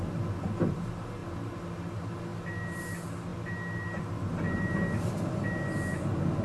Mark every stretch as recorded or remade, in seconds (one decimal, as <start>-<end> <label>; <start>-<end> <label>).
0.0-6.4 recorded